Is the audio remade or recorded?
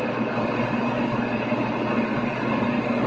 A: recorded